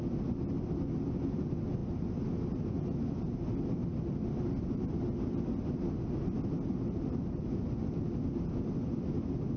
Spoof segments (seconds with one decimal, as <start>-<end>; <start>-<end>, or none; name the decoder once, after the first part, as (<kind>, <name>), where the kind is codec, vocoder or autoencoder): none